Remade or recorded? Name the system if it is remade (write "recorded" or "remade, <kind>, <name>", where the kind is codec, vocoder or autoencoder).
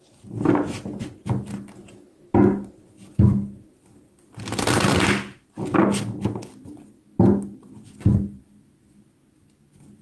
recorded